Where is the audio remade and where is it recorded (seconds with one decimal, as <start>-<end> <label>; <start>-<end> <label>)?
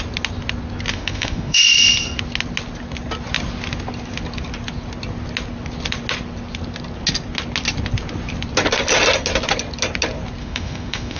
0.0-0.9 recorded; 0.9-1.6 remade; 1.6-10.4 recorded; 10.4-11.2 remade